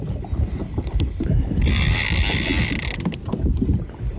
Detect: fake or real real